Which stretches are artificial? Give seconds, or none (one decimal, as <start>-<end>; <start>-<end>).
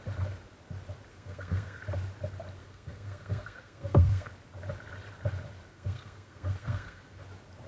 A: 1.1-1.8; 2.6-4.3; 5.7-7.2